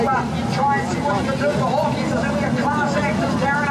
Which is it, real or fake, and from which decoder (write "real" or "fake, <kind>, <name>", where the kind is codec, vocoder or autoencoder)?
real